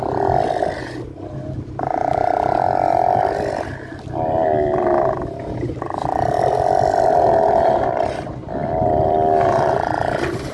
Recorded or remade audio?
recorded